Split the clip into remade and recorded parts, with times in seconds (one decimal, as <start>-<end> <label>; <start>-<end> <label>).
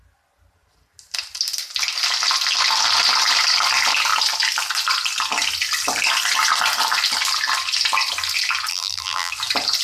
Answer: 0.0-8.7 recorded; 8.7-9.3 remade; 9.3-9.8 recorded